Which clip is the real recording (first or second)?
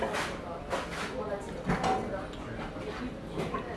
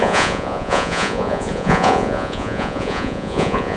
first